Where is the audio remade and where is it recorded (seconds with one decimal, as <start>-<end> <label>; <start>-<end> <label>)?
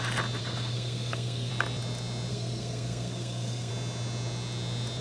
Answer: 0.0-0.4 recorded; 0.4-1.5 remade; 1.5-2.3 recorded; 2.3-3.7 remade; 3.7-5.0 recorded